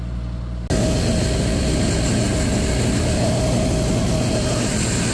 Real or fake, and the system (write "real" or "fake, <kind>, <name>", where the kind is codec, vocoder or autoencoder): real